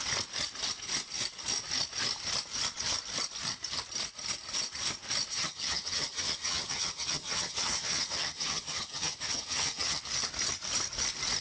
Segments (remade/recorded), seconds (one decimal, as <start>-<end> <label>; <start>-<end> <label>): 0.0-5.3 recorded; 5.3-10.0 remade; 10.0-11.4 recorded